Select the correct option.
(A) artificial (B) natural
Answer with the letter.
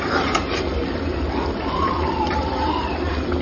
A